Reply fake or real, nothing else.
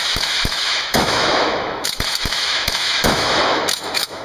fake